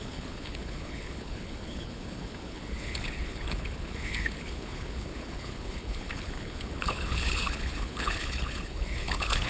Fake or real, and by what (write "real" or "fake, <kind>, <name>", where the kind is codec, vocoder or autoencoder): fake, codec, HILCodec